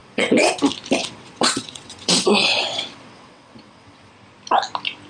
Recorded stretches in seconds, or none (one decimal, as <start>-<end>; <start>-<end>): 0.5-1.0; 4.1-5.1